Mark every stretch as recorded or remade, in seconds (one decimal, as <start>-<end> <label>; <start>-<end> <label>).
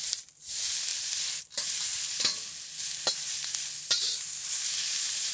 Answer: 0.0-5.3 recorded